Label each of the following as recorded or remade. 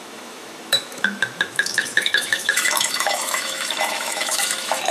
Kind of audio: remade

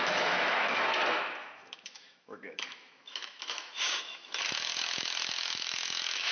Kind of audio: remade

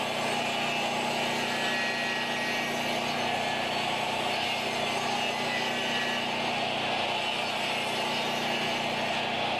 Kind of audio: recorded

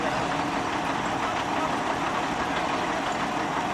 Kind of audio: recorded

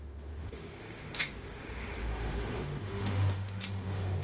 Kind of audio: remade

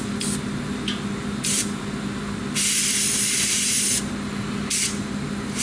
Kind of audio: recorded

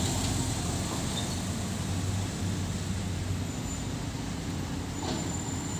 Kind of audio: recorded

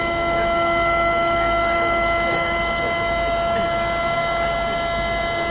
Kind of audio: recorded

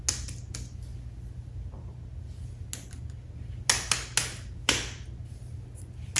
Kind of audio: recorded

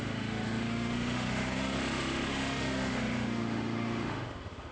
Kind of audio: remade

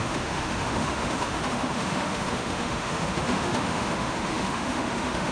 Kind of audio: remade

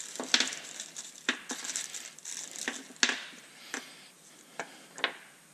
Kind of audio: recorded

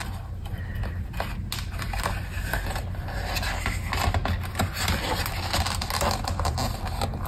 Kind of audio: recorded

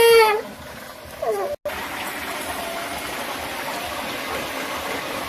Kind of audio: recorded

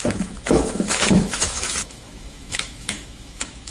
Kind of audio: remade